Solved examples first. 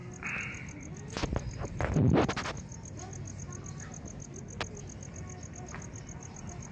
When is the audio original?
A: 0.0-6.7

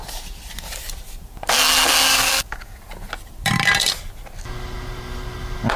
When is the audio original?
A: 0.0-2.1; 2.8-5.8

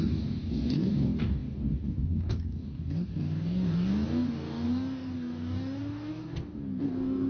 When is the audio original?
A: none